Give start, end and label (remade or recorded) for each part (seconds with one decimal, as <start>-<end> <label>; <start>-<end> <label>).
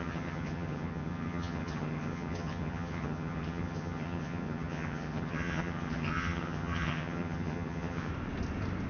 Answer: 0.0-8.1 remade; 8.1-8.9 recorded